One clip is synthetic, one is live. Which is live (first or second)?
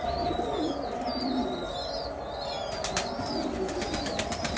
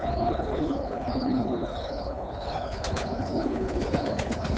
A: first